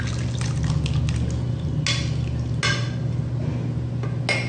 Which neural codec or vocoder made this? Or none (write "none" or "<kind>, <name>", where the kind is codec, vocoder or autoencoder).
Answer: none